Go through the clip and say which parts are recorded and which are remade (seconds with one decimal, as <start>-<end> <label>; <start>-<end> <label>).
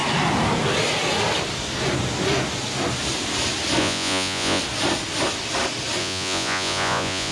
0.0-3.8 recorded; 3.8-4.6 remade; 4.6-6.0 recorded; 6.0-7.3 remade